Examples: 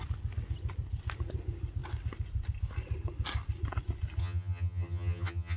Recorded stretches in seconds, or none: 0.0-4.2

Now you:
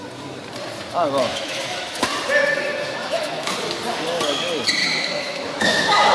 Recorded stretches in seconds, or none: 0.0-1.3; 2.0-3.0; 3.5-4.8

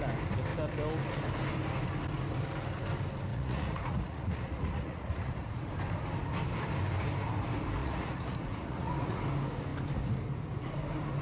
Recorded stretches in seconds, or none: 0.0-3.3; 5.7-7.8; 9.2-11.2

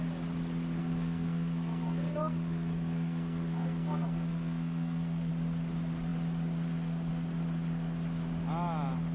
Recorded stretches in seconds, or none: 0.0-0.8; 5.3-9.1

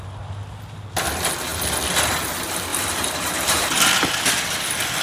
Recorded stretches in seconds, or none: 0.0-2.7; 4.3-5.0

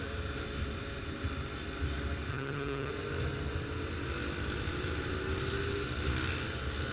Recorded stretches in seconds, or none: 0.0-2.3; 2.9-6.9